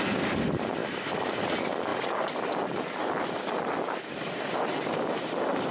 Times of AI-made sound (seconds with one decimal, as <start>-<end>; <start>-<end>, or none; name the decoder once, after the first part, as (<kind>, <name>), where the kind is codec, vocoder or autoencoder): 0.8-1.4 (vocoder, BigVGAN v2)